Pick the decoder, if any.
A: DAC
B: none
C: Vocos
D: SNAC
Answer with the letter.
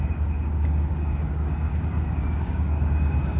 A